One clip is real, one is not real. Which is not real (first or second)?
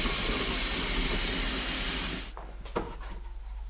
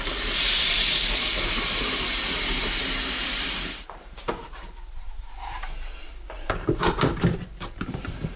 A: second